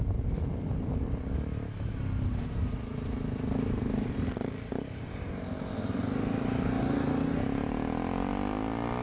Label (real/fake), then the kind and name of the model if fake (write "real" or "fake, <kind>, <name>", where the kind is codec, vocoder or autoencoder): real